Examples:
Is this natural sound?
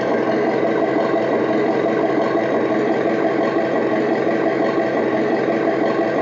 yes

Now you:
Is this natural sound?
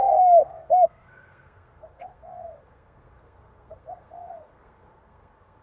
no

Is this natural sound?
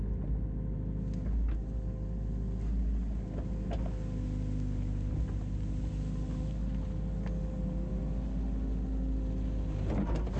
yes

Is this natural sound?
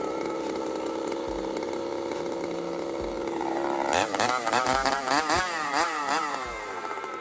no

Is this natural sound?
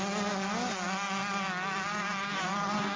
yes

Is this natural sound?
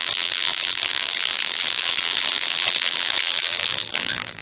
no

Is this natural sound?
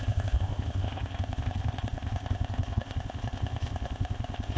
no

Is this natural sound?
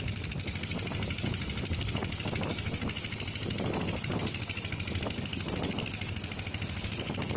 yes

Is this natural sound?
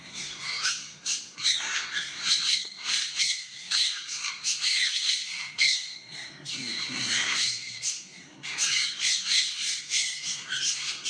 no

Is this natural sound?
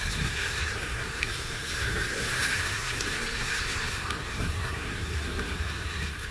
no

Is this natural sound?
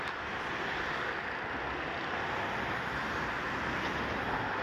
yes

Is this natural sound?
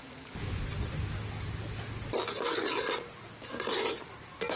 yes